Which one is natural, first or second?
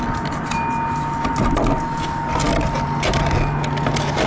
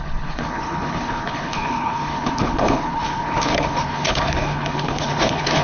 first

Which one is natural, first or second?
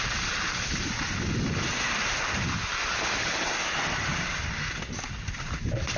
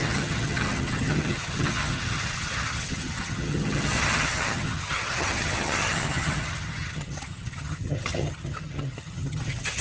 first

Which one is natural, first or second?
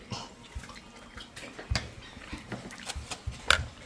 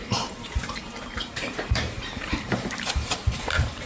first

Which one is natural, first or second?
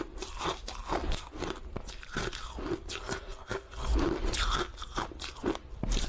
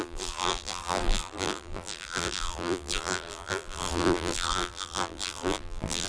first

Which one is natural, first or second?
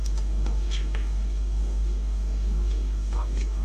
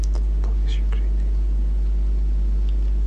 second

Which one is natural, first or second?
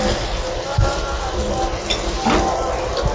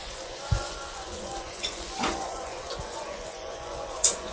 first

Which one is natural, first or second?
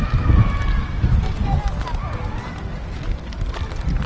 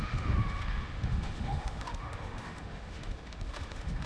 first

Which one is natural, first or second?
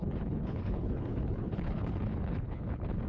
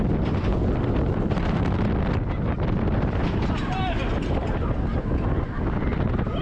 second